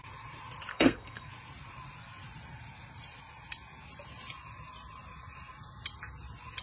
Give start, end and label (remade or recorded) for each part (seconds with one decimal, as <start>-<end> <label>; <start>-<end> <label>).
0.0-0.7 recorded; 0.7-1.3 remade; 1.3-6.6 recorded